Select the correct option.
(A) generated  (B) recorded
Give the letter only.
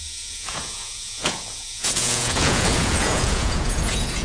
A